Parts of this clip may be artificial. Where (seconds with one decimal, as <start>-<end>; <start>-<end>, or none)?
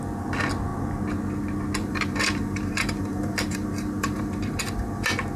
1.8-5.0